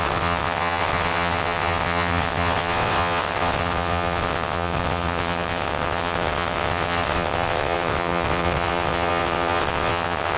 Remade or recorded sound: remade